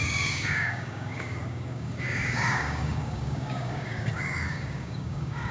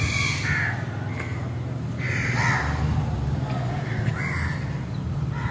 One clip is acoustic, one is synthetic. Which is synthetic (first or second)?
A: first